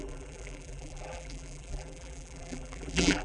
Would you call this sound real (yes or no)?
no